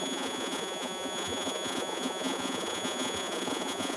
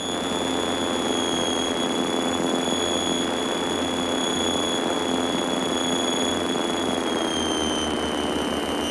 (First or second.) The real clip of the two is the second